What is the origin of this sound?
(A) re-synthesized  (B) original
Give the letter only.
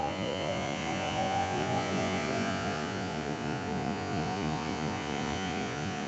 A